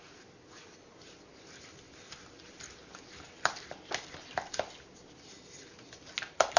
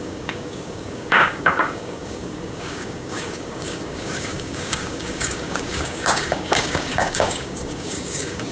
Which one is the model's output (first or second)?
second